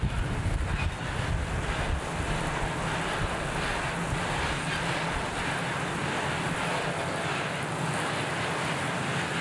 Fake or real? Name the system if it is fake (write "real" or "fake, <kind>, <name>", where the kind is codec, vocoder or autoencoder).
real